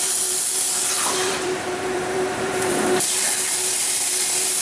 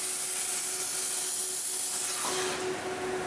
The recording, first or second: second